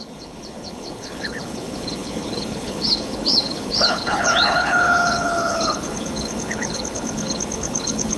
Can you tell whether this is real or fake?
fake